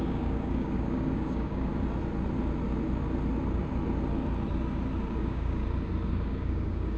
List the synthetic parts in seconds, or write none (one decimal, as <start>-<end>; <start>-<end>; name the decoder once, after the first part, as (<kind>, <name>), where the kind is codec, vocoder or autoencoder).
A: 0.0-1.7 (codec, DAC); 5.1-5.6; 6.1-7.0